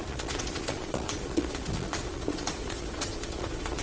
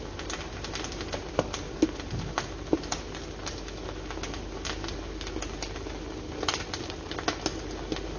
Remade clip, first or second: first